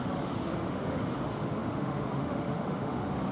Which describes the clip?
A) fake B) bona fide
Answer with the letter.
A